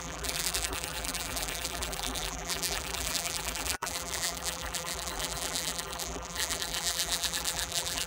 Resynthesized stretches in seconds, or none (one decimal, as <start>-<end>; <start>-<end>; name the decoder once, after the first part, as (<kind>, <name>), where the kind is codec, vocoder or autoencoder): 0.0-8.1 (vocoder, BigVGAN v2)